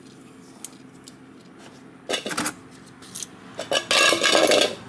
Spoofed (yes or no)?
no